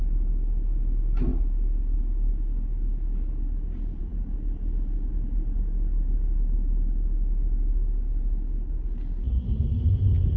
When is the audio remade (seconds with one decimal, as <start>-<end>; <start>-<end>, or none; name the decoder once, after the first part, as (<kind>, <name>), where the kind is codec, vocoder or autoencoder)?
none